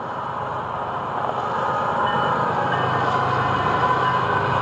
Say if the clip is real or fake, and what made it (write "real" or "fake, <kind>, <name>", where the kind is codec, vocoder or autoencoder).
real